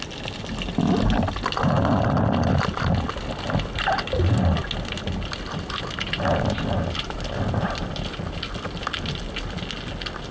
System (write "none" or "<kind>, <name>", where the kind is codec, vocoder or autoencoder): none